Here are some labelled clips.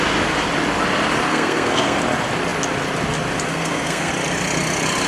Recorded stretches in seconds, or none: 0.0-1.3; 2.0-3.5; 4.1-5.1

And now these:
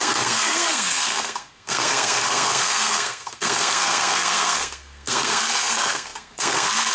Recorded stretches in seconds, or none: none

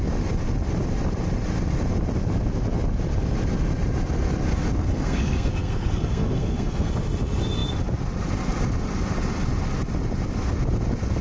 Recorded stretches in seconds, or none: 0.0-4.9; 6.9-11.2

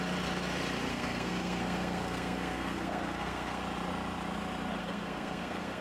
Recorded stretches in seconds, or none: 0.0-0.9; 3.6-4.8

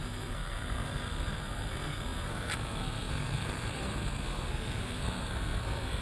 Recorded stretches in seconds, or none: none

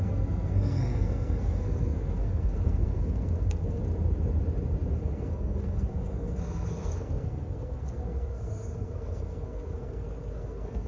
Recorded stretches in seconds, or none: 3.8-4.9

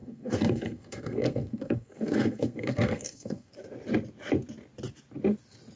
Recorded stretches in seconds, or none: 3.5-5.8